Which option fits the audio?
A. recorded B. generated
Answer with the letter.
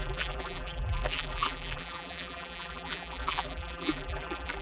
B